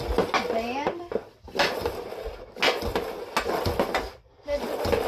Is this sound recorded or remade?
recorded